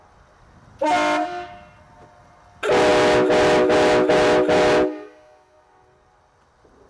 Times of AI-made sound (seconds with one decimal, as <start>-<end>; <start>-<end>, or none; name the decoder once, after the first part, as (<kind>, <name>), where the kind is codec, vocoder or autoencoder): none